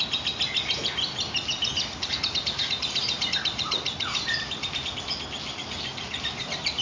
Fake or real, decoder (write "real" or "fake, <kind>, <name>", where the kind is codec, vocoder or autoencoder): real